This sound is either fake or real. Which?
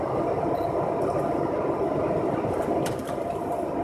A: fake